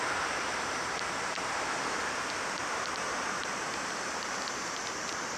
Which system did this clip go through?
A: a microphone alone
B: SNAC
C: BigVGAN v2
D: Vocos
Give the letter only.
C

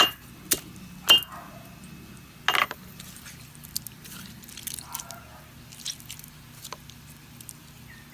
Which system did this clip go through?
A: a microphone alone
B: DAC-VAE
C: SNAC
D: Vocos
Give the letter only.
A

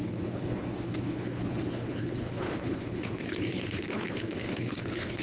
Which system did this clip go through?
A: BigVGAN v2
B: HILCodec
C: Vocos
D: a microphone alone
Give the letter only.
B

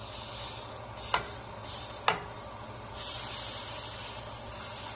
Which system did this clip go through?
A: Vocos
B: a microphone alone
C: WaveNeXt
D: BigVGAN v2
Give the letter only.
B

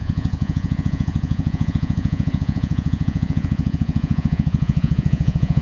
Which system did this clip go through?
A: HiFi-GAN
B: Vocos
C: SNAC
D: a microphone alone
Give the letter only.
B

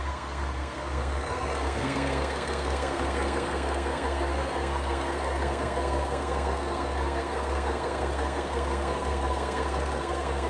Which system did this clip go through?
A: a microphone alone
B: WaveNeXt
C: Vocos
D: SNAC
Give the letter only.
D